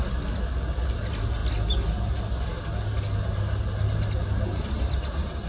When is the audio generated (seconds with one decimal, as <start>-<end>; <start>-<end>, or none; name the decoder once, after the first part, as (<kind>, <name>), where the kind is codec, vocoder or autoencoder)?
none